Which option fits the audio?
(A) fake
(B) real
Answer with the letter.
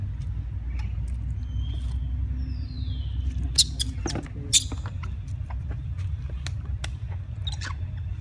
B